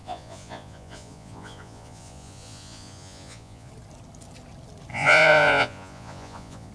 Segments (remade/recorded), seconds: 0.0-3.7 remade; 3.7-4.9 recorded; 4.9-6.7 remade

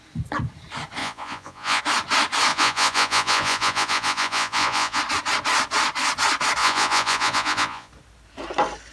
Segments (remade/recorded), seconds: 0.0-1.0 recorded; 1.0-1.8 remade; 1.8-2.5 recorded; 2.5-5.0 remade; 5.0-6.6 recorded; 6.6-7.9 remade; 7.9-8.9 recorded

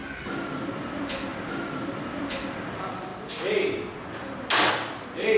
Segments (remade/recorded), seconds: 0.0-5.4 recorded

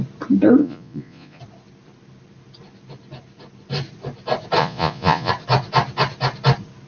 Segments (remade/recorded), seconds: 0.0-0.6 recorded; 0.6-1.4 remade; 1.4-4.6 recorded; 4.6-5.3 remade; 5.3-6.9 recorded